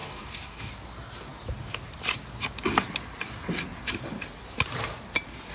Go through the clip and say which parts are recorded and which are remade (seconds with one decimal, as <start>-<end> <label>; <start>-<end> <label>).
0.0-0.7 remade; 0.7-5.5 recorded